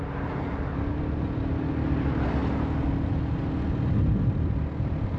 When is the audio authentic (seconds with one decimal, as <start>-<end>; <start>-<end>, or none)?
0.0-5.2